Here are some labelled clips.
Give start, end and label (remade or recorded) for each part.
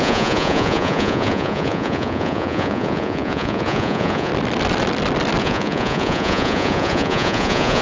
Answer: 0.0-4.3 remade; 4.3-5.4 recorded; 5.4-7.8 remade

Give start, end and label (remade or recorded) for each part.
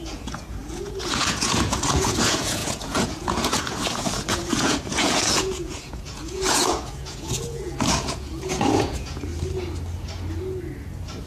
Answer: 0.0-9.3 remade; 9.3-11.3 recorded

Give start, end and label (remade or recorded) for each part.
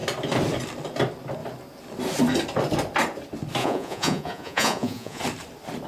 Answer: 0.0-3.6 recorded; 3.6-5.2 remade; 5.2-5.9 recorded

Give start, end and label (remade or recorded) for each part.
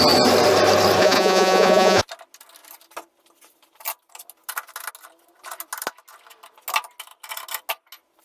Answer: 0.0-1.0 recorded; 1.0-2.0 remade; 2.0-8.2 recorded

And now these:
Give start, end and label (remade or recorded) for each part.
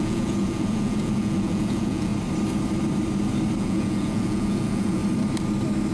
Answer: 0.0-2.1 remade; 2.1-3.6 recorded; 3.6-5.0 remade; 5.0-5.9 recorded